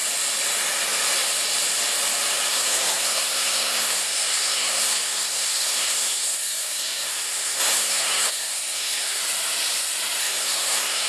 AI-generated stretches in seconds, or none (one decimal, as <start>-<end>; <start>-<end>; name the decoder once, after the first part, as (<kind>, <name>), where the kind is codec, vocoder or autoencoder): 2.5-9.2 (codec, SNAC); 10.2-11.1